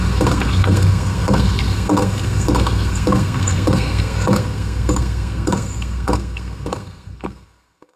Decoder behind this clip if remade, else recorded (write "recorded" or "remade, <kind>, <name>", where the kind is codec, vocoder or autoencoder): remade, codec, SNAC